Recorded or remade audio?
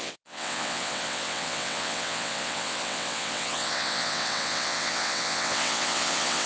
remade